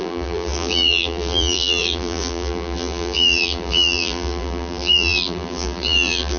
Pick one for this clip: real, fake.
fake